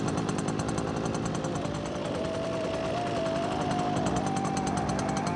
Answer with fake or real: real